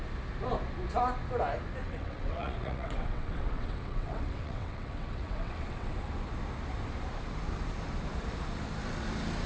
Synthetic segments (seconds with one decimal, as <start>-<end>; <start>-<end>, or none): 1.8-5.9